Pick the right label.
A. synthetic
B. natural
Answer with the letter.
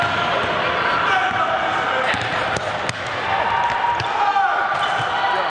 B